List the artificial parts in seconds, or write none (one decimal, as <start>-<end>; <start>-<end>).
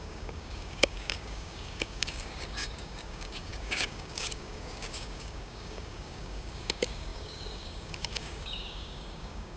0.0-9.6